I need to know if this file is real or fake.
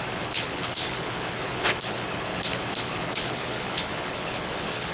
fake